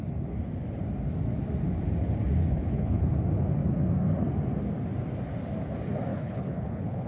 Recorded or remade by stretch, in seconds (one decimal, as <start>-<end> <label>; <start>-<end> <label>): 0.0-2.4 recorded; 2.4-3.1 remade; 3.1-6.1 recorded; 6.1-7.1 remade